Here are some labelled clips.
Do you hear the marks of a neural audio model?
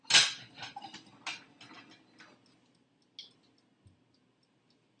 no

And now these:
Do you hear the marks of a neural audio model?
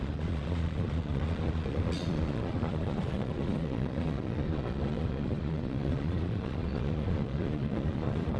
yes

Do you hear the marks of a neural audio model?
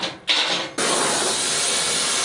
no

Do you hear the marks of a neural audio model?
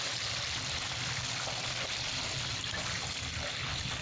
no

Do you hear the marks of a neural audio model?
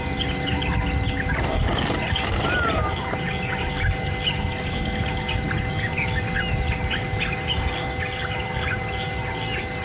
no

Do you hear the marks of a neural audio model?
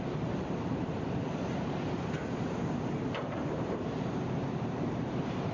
yes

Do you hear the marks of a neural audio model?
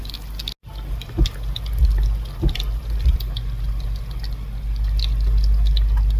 no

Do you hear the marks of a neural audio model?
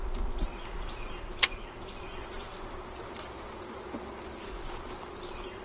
no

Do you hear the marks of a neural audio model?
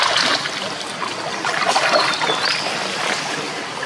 no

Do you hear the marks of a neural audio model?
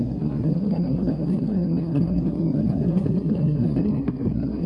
yes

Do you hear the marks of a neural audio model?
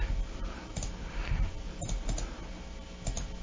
no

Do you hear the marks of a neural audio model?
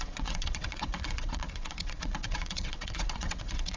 yes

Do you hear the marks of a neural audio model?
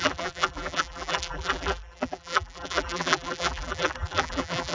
yes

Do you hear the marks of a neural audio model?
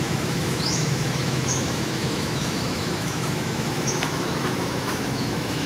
yes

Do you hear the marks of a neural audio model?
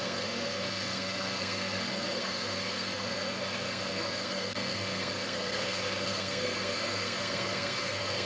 yes